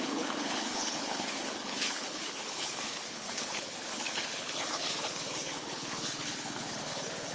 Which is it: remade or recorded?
remade